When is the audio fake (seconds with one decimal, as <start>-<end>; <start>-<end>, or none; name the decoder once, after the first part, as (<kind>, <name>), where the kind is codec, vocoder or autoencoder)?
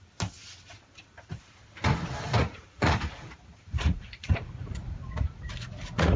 2.4-6.2 (vocoder, Vocos)